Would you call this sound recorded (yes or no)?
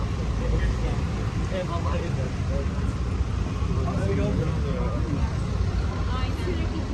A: yes